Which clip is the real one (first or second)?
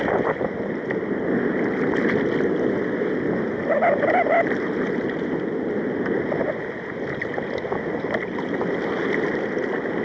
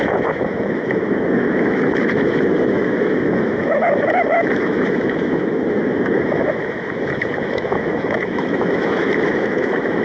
first